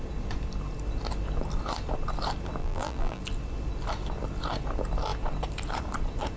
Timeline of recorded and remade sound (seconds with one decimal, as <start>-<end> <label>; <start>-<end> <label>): 0.0-2.6 recorded; 2.6-3.2 remade; 3.2-6.4 recorded